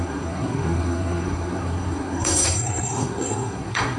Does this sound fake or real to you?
fake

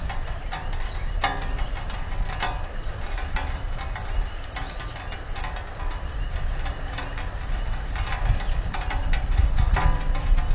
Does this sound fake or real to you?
fake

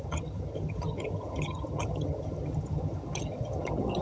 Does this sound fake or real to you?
fake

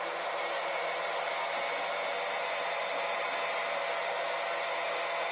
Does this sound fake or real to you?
real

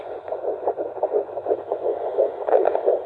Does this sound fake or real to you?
fake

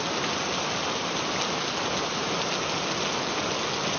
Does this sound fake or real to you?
real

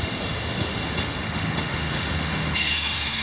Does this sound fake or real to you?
fake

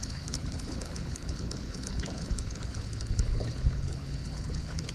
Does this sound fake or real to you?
fake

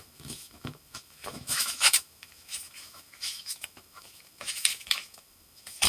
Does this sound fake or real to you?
fake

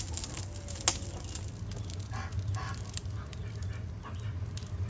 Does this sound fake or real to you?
real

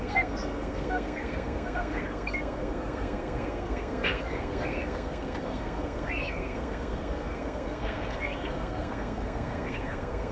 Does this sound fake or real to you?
fake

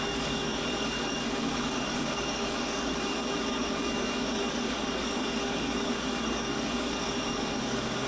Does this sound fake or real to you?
fake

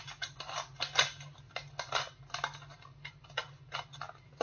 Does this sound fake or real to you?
real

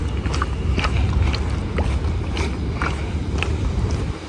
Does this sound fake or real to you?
real